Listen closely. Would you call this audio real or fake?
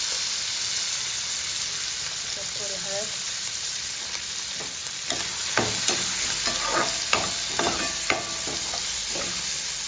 real